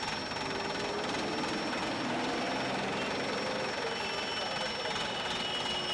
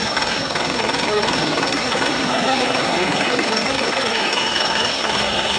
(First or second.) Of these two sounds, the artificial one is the second